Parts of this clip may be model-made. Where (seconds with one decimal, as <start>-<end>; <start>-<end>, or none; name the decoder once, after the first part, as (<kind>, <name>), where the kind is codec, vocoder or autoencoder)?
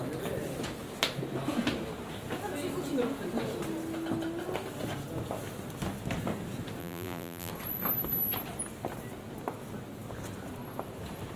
6.8-7.5 (vocoder, BigVGAN v2)